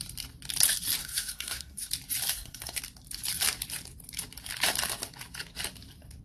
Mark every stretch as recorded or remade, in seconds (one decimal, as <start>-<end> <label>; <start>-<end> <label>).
0.0-1.0 recorded; 1.0-1.9 remade; 1.9-2.3 recorded; 2.3-2.8 remade; 2.8-6.2 recorded